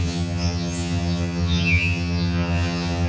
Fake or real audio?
fake